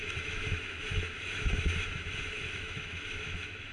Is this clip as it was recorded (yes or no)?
no